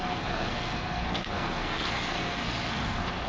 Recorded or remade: remade